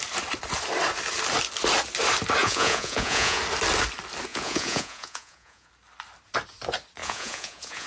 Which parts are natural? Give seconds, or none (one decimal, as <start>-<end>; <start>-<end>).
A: 0.0-2.4; 3.4-4.3; 5.7-7.0